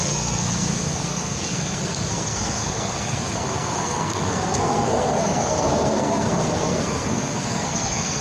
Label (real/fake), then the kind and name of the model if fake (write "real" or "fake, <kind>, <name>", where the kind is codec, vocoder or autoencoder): fake, codec, SNAC